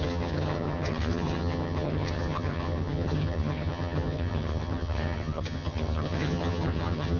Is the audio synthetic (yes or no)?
yes